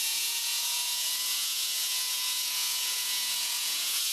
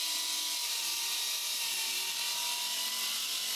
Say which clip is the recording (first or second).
second